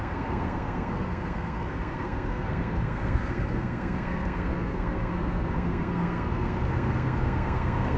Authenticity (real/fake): fake